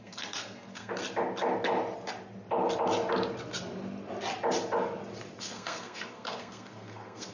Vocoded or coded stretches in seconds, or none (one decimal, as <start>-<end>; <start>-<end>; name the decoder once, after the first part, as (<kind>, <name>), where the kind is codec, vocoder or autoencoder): 0.0-1.0 (codec, SNAC); 5.4-7.3